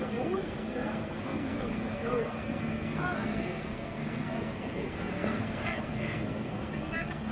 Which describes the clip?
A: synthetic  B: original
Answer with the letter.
A